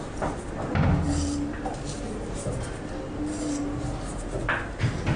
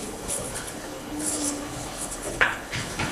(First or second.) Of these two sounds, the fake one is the second